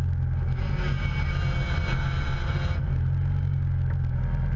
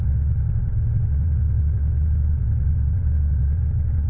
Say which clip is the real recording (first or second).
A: first